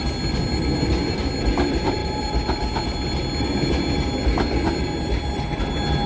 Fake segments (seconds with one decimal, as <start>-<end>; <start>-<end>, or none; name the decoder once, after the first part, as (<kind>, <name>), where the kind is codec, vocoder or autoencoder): none